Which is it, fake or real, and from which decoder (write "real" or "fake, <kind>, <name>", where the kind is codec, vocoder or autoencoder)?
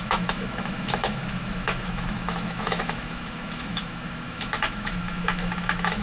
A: fake, autoencoder, DAC-VAE